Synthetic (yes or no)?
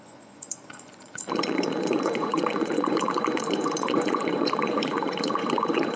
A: yes